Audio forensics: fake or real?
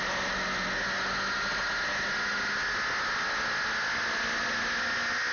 real